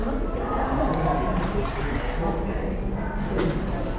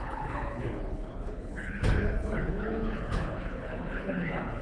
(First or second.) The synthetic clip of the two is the second